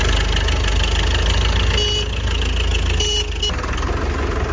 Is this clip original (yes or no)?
yes